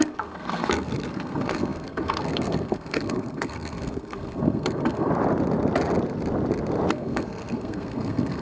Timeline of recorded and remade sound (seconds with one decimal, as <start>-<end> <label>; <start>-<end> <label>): 0.0-5.1 remade; 5.1-6.9 recorded; 6.9-8.4 remade